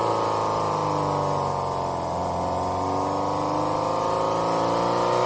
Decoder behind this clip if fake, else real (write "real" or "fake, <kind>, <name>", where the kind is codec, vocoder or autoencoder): real